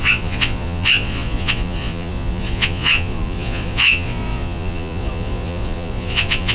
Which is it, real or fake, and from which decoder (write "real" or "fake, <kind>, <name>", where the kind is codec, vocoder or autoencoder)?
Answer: fake, vocoder, Vocos